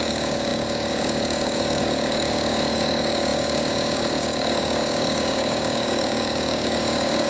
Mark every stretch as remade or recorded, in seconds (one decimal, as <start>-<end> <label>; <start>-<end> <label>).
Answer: 0.0-7.3 remade